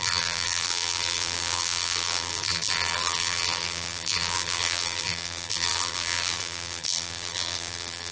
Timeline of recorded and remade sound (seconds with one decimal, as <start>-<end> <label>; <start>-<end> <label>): 0.0-8.1 remade